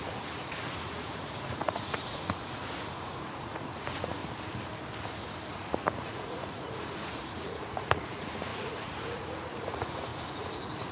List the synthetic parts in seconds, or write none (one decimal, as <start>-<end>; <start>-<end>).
0.0-4.2; 5.5-10.9